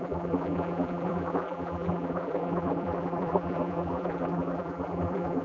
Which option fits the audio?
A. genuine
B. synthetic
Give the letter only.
B